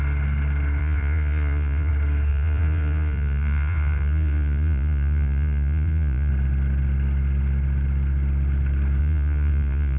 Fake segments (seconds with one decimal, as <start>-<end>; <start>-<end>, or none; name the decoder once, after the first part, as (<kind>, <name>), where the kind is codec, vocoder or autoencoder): 0.8-1.9 (vocoder, Vocos); 2.3-6.3; 9.0-10.0